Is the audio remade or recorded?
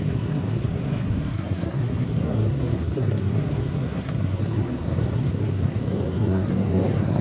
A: remade